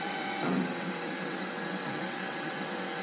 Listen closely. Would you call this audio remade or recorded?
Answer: remade